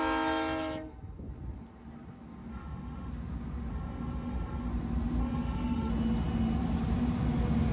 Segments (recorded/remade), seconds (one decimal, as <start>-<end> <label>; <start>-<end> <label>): 0.0-2.5 recorded; 2.5-3.1 remade; 3.1-3.7 recorded; 3.7-4.7 remade; 4.7-5.2 recorded; 5.2-5.9 remade; 5.9-7.7 recorded